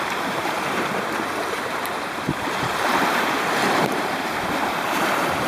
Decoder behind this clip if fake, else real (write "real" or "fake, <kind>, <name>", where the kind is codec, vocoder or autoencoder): fake, vocoder, BigVGAN v2